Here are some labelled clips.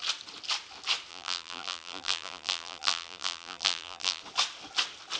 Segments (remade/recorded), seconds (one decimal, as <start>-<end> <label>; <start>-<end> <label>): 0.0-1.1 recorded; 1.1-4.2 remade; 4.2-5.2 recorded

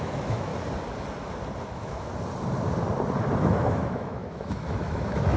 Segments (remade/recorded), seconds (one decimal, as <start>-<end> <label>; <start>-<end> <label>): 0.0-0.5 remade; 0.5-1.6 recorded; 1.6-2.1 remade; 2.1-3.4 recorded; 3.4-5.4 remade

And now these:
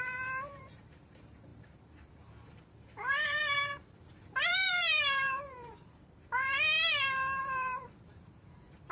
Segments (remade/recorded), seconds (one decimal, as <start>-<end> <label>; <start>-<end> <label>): 0.0-6.5 remade; 6.5-7.4 recorded; 7.4-8.9 remade

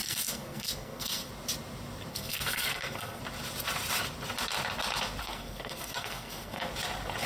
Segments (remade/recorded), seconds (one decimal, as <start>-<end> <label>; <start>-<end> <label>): 0.0-1.3 remade; 1.3-2.1 recorded; 2.1-3.2 remade; 3.2-5.2 recorded; 5.2-6.7 remade; 6.7-7.3 recorded